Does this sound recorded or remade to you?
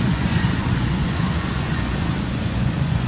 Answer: remade